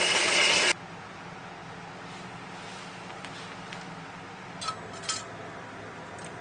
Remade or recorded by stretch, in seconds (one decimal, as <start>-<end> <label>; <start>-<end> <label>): 0.0-6.4 recorded